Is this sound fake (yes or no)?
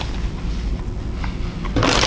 no